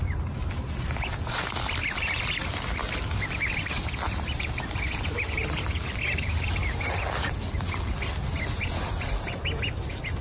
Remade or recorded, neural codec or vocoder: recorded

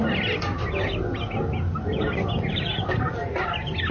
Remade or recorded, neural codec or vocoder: recorded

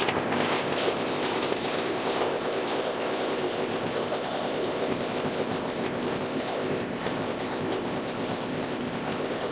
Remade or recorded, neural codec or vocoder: remade, codec, ZipCodec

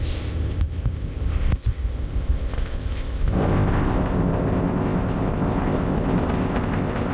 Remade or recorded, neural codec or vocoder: remade, codec, ZipCodec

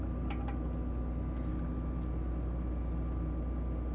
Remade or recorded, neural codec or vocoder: recorded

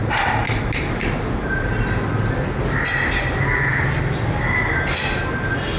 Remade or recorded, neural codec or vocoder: recorded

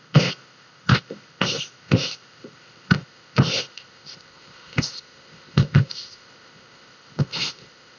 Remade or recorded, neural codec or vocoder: remade, codec, ZipCodec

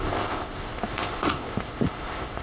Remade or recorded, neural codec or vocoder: remade, codec, ZipCodec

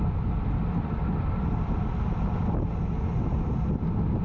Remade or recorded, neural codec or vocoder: recorded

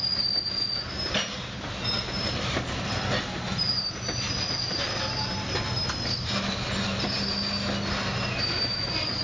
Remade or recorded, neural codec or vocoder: recorded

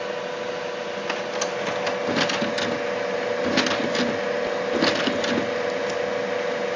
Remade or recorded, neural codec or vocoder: recorded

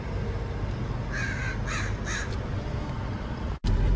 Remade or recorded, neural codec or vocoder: recorded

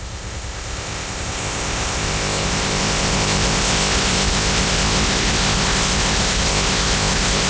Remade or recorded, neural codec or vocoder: remade, codec, ZipCodec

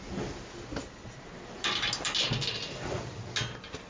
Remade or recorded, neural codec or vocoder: recorded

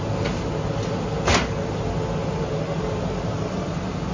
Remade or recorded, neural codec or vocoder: recorded